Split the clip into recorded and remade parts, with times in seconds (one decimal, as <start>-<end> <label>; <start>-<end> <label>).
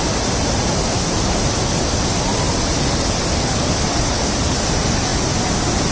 0.0-5.9 recorded